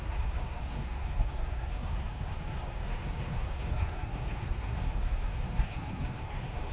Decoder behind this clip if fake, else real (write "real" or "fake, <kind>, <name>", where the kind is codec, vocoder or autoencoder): fake, codec, SNAC